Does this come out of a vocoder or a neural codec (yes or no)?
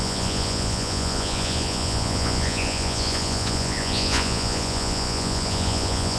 yes